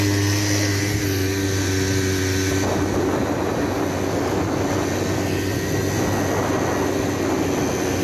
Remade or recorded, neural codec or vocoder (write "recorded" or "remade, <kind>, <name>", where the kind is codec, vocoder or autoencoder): recorded